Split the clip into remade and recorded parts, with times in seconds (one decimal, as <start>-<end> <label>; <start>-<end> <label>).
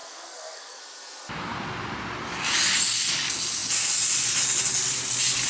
0.0-0.8 remade; 0.8-5.5 recorded